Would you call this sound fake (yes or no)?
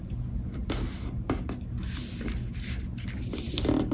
no